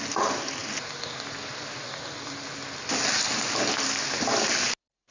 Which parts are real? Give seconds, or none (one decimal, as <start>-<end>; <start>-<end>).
0.0-5.1